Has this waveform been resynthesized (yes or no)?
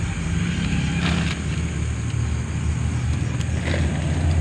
no